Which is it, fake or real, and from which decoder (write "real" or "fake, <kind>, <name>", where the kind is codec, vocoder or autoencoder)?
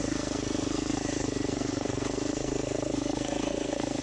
fake, codec, SNAC